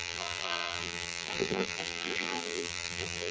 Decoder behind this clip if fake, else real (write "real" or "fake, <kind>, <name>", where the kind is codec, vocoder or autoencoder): fake, vocoder, BigVGAN v2